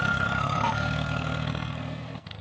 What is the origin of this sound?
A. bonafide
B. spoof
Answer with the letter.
B